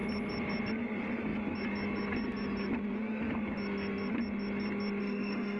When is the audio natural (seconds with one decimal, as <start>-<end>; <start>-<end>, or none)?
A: 0.0-5.0